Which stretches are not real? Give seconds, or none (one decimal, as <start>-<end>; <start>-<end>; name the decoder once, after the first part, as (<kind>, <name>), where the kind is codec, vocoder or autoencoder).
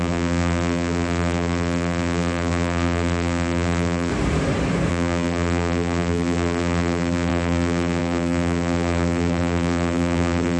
0.0-4.1 (vocoder, BigVGAN v2); 4.9-10.6